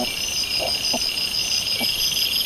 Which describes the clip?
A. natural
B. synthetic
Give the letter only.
A